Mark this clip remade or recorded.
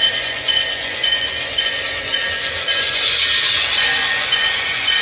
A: remade